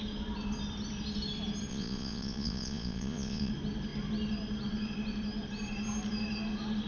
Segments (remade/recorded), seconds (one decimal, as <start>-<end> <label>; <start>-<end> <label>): 0.0-1.7 recorded; 1.7-3.5 remade; 3.5-6.9 recorded